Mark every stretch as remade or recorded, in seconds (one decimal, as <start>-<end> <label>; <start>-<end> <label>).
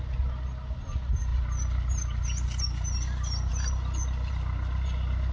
0.0-5.3 recorded